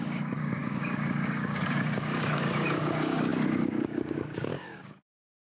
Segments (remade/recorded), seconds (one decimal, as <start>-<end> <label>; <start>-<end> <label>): 0.0-5.5 remade